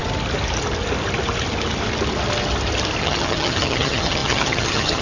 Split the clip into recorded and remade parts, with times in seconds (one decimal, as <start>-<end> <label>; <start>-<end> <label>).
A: 0.0-3.0 recorded; 3.0-5.0 remade